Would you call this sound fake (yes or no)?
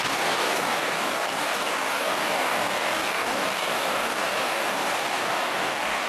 yes